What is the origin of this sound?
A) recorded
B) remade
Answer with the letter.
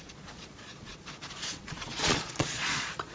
B